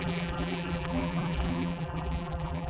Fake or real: fake